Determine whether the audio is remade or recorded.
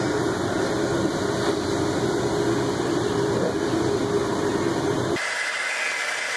recorded